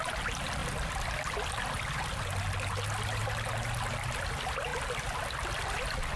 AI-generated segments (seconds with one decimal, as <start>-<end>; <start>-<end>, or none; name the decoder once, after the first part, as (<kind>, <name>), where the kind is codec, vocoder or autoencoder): none